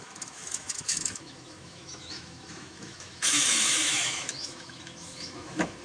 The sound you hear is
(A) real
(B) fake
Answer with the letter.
B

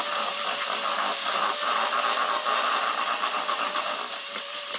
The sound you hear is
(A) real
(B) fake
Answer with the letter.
A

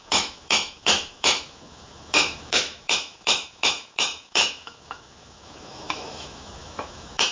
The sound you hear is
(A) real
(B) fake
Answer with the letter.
B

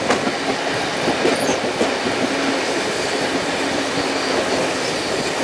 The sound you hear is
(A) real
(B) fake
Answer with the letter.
A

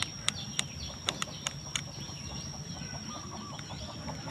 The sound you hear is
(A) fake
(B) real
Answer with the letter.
B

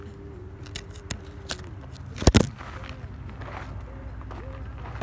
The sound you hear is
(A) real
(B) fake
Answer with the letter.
A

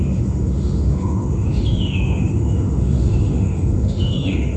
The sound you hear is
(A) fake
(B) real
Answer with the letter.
A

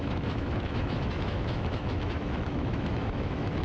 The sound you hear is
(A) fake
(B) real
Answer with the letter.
A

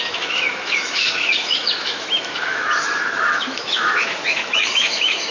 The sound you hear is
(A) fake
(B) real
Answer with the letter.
A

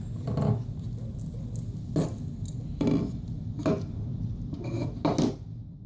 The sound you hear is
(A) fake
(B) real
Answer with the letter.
B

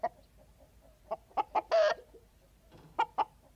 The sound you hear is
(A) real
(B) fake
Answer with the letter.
A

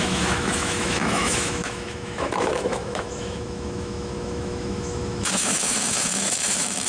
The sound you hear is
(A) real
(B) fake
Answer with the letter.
B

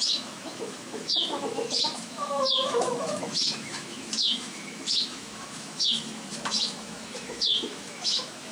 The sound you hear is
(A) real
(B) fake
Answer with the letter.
B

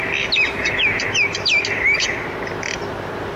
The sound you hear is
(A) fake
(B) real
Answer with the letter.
B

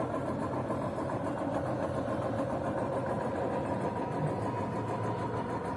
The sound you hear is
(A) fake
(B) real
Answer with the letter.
B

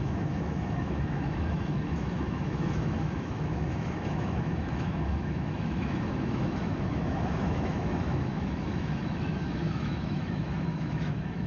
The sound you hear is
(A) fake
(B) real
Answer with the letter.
A